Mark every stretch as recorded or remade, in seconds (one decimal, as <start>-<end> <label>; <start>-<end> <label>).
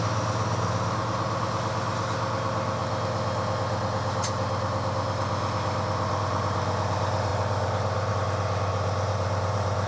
0.0-7.3 recorded; 7.3-8.1 remade; 8.1-8.7 recorded; 8.7-9.9 remade